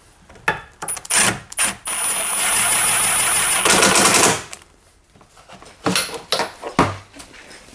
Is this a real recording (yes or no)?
yes